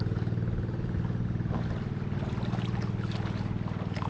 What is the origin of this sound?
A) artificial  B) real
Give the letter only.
B